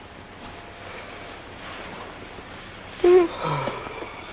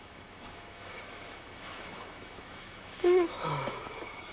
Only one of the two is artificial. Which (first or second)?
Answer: second